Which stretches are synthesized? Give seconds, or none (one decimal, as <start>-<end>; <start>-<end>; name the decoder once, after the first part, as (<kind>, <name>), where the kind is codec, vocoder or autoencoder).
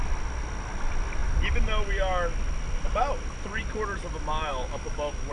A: 4.5-5.3 (autoencoder, DAC-VAE)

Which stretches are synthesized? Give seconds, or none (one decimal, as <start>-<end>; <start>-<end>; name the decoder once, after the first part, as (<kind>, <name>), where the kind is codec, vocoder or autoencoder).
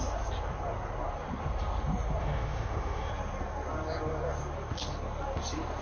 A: 2.2-3.1 (autoencoder, DAC-VAE)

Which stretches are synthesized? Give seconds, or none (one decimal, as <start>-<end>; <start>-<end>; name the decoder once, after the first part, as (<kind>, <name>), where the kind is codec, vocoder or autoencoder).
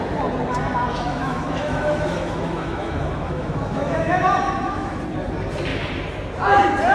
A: 0.9-5.0 (autoencoder, DAC-VAE)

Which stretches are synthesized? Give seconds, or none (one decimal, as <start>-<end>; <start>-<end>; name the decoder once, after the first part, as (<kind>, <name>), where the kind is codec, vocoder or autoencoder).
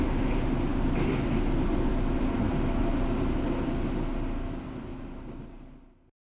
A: none